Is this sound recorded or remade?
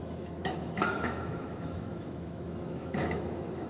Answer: remade